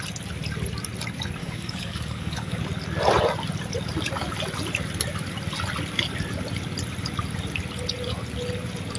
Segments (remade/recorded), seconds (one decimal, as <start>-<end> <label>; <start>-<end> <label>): 0.0-1.4 recorded; 1.4-2.6 remade; 2.6-9.0 recorded